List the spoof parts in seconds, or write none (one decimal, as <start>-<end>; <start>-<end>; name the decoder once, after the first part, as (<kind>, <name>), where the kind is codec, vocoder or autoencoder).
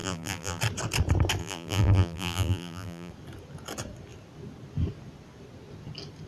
0.0-0.6 (vocoder, BigVGAN v2); 1.4-3.1